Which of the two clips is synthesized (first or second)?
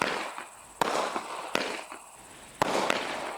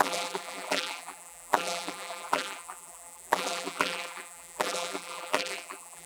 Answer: second